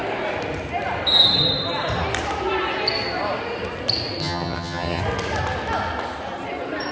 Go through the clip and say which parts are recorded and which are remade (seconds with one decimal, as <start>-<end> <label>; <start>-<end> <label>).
0.0-4.2 recorded; 4.2-5.0 remade; 5.0-6.9 recorded